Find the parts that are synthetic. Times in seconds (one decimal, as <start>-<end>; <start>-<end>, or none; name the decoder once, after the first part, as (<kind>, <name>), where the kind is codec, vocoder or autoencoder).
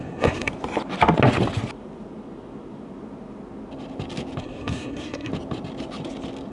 0.0-0.5 (codec, SNAC); 4.4-5.3